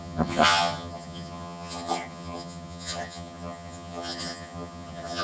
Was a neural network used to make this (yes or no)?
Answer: yes